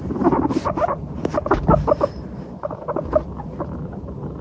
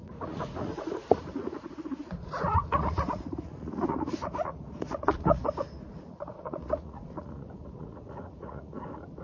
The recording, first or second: first